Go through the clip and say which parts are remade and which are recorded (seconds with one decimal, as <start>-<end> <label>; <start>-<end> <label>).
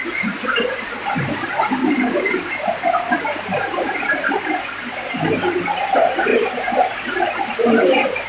0.0-8.3 recorded